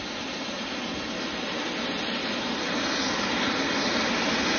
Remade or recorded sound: recorded